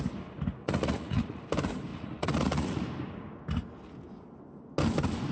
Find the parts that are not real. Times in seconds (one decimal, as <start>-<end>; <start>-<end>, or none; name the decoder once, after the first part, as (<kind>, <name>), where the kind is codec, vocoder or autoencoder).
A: 0.6-1.4 (vocoder, Vocos); 1.9-2.8